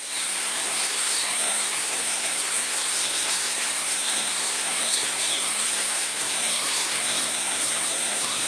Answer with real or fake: fake